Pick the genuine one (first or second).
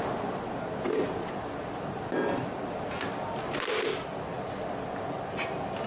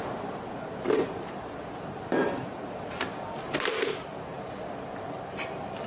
first